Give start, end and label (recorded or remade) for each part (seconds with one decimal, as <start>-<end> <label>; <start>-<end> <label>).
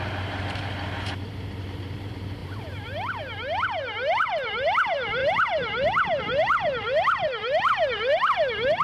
0.0-8.1 remade; 8.1-8.8 recorded